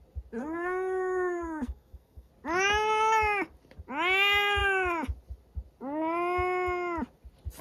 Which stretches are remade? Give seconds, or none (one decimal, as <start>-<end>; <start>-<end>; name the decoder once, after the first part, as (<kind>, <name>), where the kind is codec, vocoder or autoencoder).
0.4-2.3 (codec, SNAC)